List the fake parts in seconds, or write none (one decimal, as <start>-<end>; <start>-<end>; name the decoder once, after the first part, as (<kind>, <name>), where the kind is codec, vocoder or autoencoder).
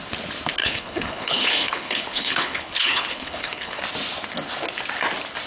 0.6-3.8 (codec, HILCodec)